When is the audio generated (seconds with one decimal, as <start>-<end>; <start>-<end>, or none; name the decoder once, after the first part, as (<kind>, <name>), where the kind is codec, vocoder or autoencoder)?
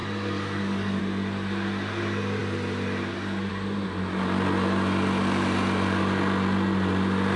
0.0-1.0 (codec, DAC)